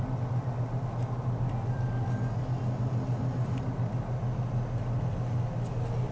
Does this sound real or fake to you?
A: real